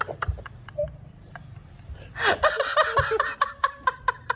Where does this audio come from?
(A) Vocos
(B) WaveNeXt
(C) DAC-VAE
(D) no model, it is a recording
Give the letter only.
D